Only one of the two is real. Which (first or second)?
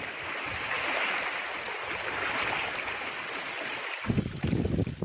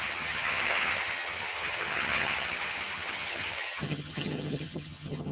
first